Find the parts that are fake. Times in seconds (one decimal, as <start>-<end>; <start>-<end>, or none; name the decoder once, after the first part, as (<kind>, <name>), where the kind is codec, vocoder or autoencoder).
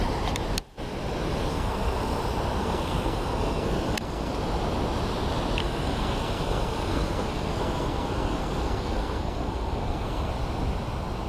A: 1.5-2.2 (codec, SNAC); 2.6-4.3; 5.6-10.3